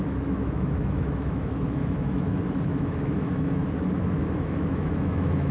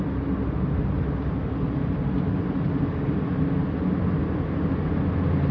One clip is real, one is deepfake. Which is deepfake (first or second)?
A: first